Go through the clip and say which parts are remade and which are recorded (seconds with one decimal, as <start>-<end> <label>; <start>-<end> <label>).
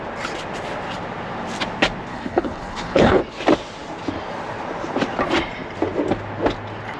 0.0-2.1 recorded; 2.1-3.2 remade; 3.2-7.0 recorded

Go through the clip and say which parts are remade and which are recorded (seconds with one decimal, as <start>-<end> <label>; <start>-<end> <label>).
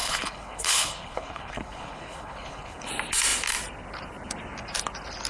0.0-2.9 remade; 2.9-5.3 recorded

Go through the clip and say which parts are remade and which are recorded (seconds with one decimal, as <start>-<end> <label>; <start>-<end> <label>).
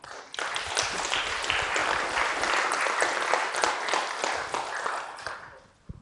0.0-6.0 recorded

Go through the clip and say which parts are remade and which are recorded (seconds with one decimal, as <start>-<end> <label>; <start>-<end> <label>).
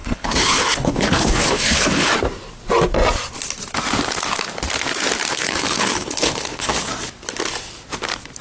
0.0-2.1 remade; 2.1-5.3 recorded; 5.3-6.7 remade; 6.7-8.4 recorded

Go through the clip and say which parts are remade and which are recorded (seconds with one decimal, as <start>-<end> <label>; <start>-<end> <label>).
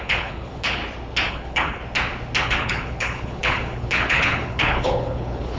0.0-0.8 remade; 0.8-1.3 recorded; 1.3-1.8 remade; 1.8-2.4 recorded; 2.4-5.6 remade